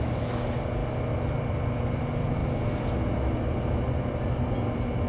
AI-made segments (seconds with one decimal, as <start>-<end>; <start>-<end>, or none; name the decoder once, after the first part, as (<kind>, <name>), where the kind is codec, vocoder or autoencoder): none